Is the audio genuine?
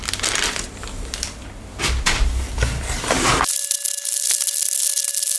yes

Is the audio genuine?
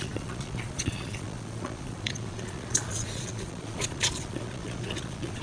no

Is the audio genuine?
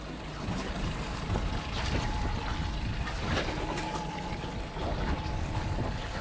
yes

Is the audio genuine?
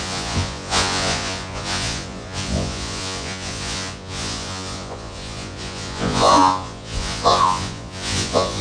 no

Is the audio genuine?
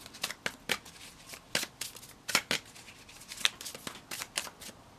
yes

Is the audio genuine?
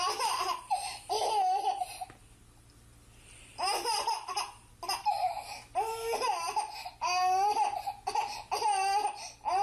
yes